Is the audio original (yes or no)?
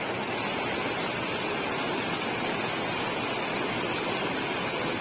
yes